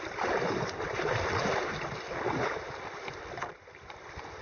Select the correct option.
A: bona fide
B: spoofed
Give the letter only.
A